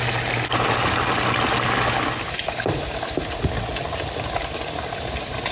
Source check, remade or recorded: recorded